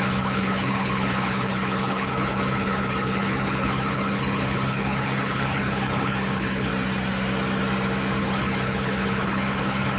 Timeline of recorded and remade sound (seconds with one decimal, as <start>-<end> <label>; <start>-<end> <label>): 0.0-6.7 remade; 6.7-8.2 recorded; 8.2-10.0 remade